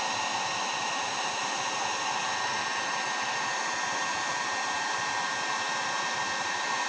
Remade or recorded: recorded